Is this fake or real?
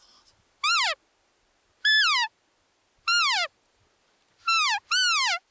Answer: real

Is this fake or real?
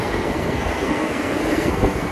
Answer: fake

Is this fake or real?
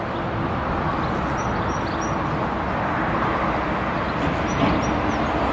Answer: real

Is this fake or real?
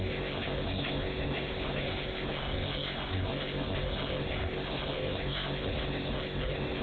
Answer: fake